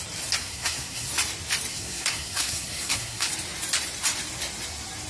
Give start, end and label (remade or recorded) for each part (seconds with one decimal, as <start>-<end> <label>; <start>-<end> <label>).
0.0-0.4 recorded; 0.4-1.1 remade; 1.1-1.7 recorded; 1.7-3.3 remade; 3.3-5.1 recorded